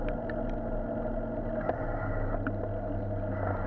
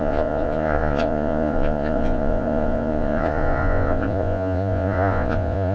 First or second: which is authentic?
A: first